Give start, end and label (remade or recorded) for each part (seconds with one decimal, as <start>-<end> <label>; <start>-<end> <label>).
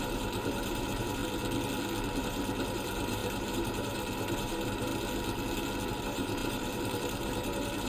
0.0-1.2 remade; 1.2-2.2 recorded; 2.2-4.9 remade; 4.9-6.0 recorded; 6.0-7.9 remade